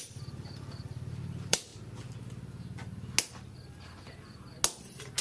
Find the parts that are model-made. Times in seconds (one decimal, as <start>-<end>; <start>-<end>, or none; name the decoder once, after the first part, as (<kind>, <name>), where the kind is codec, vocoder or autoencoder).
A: 0.0-1.7 (vocoder, BigVGAN v2); 4.8-5.2